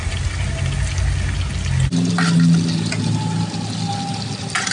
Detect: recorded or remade recorded